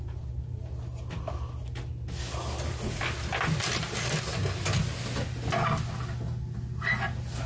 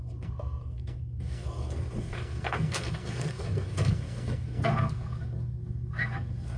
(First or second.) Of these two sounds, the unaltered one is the first